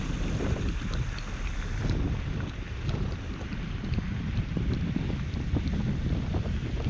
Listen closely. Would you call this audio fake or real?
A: real